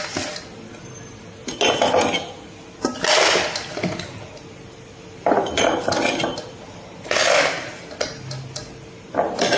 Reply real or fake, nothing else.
real